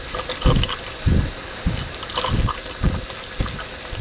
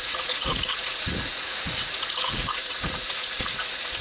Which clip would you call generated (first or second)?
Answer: second